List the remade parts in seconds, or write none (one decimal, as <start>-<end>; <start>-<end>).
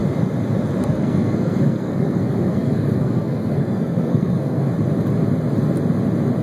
0.8-4.7